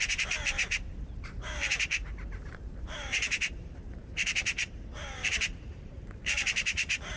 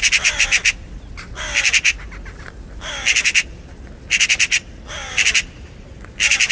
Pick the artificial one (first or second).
first